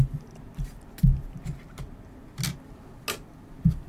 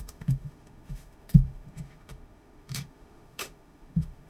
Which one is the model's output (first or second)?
second